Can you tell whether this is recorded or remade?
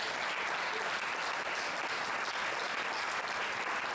recorded